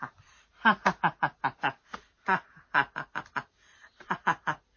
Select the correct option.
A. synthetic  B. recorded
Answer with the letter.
B